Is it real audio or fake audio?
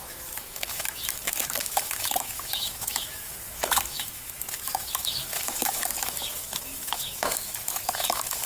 fake